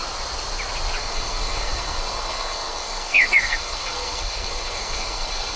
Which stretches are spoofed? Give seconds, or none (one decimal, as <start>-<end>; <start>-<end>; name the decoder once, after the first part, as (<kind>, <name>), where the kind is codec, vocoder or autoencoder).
1.0-5.6 (codec, SNAC)